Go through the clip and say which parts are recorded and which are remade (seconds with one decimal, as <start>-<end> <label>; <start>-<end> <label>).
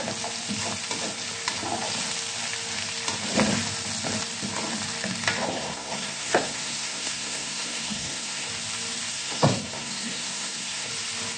0.0-5.5 recorded; 5.5-8.5 remade; 8.5-9.1 recorded; 9.1-10.9 remade; 10.9-11.4 recorded